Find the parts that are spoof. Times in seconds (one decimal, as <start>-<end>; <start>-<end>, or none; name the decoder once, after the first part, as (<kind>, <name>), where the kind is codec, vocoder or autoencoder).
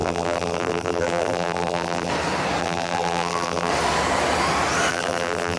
0.0-2.1 (vocoder, BigVGAN v2); 2.6-3.7; 4.9-5.6